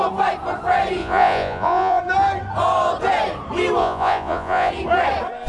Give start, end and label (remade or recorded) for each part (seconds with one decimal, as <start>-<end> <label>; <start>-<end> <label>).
0.0-1.0 recorded; 1.0-2.0 remade; 2.0-3.8 recorded; 3.8-4.7 remade; 4.7-5.5 recorded